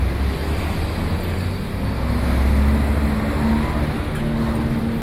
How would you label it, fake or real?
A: real